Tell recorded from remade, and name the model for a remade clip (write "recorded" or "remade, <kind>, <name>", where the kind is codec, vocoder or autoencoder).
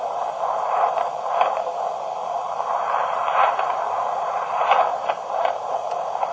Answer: remade, vocoder, BigVGAN v2